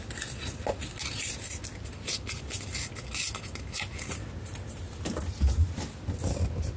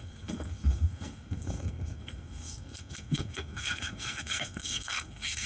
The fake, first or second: second